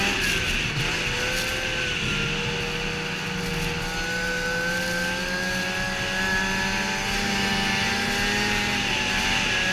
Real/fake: real